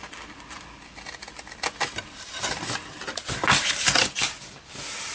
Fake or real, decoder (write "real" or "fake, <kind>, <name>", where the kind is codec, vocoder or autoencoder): real